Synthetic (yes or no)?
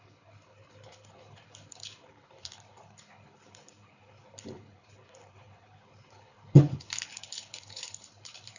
yes